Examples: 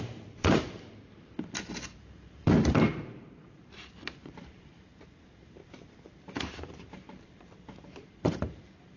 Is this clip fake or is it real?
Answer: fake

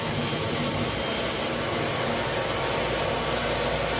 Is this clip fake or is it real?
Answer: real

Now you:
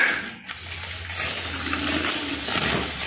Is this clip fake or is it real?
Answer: real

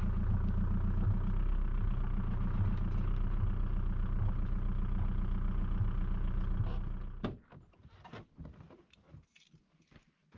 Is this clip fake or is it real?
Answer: real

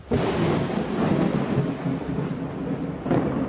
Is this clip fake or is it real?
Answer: real